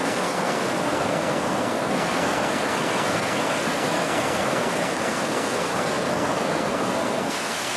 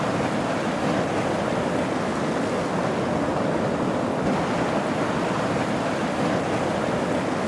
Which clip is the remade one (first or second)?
first